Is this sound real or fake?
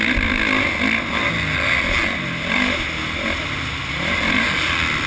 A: real